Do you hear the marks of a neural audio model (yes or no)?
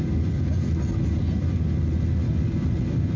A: no